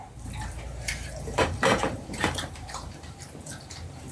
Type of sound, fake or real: fake